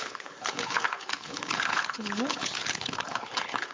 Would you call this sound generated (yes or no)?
yes